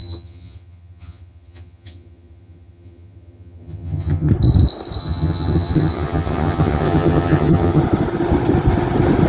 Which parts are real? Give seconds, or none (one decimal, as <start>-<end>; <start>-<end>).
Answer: 4.3-5.0; 7.8-9.3